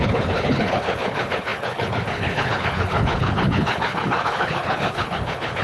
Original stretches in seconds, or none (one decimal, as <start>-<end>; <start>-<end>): none